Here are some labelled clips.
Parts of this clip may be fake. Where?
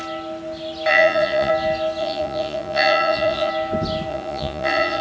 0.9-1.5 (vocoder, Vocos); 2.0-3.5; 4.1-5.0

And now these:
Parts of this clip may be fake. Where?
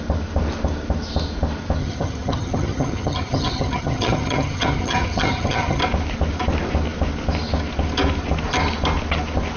1.8-5.8 (vocoder, HiFi-GAN)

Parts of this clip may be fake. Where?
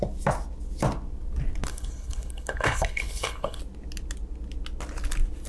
1.7-3.6 (codec, HILCodec)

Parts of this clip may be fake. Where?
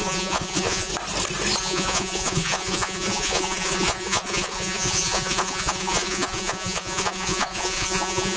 0.0-0.9 (vocoder, Vocos); 1.6-8.4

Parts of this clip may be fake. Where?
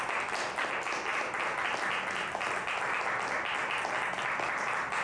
none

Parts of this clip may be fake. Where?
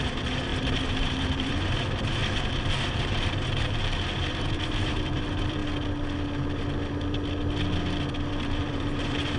0.0-2.2 (vocoder, BigVGAN v2); 2.9-5.6; 8.3-9.4